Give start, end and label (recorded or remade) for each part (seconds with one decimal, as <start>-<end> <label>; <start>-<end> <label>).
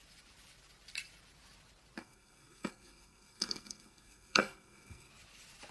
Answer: 0.0-2.0 recorded; 2.0-5.1 remade; 5.1-5.7 recorded